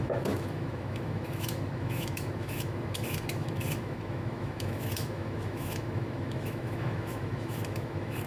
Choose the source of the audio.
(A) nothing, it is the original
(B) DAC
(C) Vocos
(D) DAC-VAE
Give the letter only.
D